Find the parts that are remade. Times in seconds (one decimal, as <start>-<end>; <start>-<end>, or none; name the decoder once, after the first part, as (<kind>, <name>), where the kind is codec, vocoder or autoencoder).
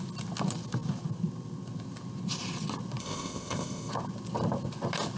3.0-3.9 (codec, ZipCodec)